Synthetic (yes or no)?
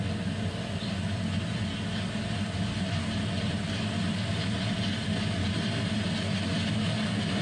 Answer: no